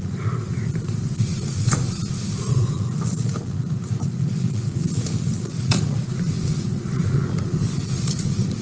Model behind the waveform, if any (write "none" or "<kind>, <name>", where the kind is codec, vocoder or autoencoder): vocoder, Vocos